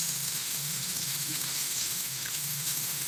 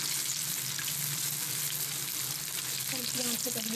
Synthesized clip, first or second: first